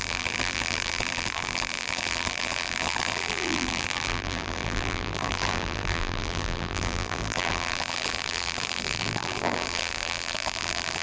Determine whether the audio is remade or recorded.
remade